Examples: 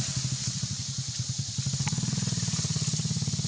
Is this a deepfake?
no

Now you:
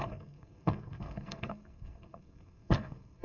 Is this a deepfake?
yes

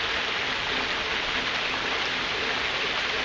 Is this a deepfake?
no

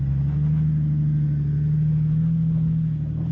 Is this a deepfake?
no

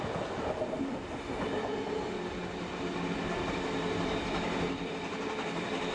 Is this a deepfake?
no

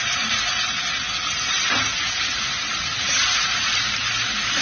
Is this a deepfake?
no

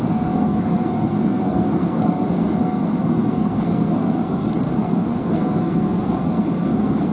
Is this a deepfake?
yes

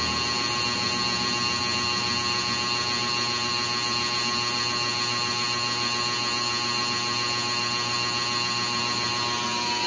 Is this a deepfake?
no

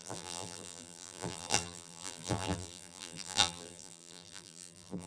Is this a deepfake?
yes